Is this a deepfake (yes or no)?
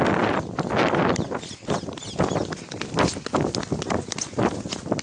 no